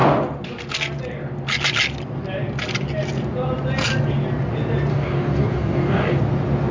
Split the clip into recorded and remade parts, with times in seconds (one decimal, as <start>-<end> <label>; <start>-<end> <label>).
0.0-4.9 recorded; 4.9-6.2 remade; 6.2-6.7 recorded